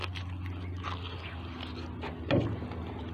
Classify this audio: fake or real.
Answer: real